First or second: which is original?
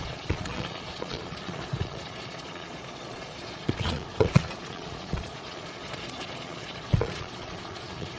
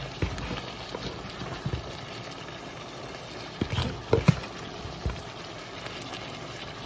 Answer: second